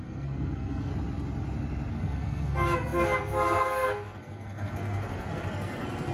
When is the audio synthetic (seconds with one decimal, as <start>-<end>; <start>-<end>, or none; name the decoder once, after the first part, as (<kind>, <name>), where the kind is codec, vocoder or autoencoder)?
0.0-0.9 (codec, SNAC); 1.9-6.1